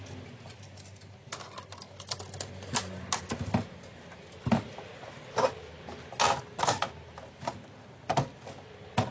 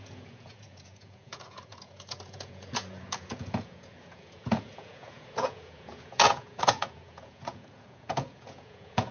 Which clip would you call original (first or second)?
first